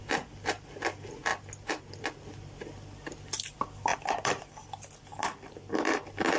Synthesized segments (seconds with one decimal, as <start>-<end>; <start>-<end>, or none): 5.1-6.4